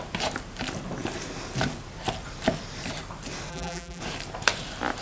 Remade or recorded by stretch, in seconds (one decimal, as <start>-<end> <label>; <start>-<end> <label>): 0.0-3.5 recorded; 3.5-4.0 remade; 4.0-5.0 recorded